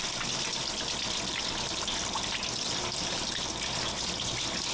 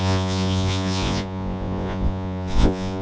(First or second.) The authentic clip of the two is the first